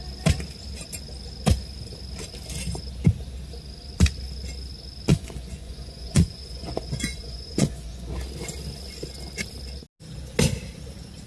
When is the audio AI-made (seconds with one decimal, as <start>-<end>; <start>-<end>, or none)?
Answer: 5.1-8.1